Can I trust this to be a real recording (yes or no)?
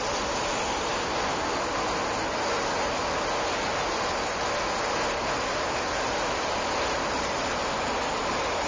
yes